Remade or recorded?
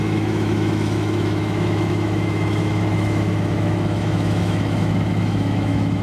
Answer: remade